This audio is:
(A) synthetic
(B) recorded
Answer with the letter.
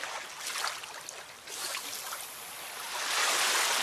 B